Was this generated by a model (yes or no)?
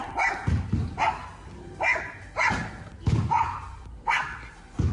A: no